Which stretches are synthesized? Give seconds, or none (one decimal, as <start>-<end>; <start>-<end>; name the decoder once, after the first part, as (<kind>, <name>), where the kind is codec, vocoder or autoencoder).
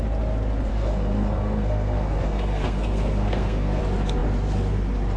0.7-3.8 (codec, SNAC)